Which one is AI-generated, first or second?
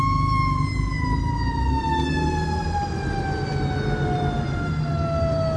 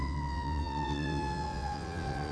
second